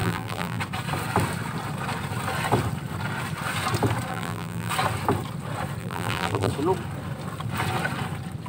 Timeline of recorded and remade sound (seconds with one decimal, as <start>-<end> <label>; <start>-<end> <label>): 0.0-0.6 remade; 0.6-4.1 recorded; 4.1-4.7 remade; 4.7-5.8 recorded; 5.8-6.5 remade; 6.5-8.5 recorded